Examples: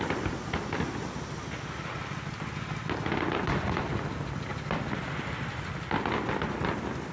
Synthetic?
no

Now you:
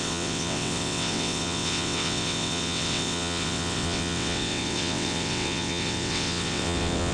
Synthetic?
yes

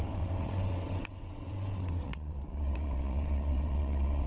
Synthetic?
yes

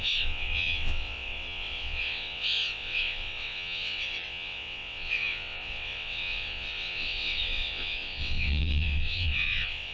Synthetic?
yes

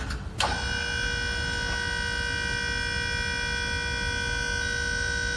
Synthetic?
no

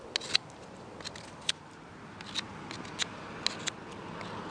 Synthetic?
no